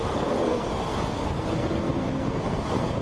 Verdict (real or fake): fake